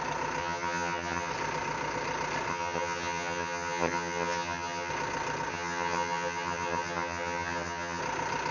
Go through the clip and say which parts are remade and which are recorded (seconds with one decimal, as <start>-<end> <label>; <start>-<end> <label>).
0.0-0.4 recorded; 0.4-1.3 remade; 1.3-2.5 recorded; 2.5-4.9 remade; 4.9-5.5 recorded; 5.5-8.0 remade; 8.0-8.5 recorded